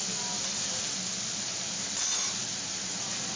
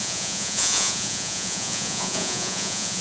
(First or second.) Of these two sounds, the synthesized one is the second